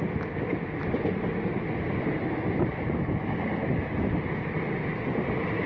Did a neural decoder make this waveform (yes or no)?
no